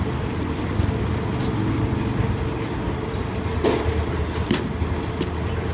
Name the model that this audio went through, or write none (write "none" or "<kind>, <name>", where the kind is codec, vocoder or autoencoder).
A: none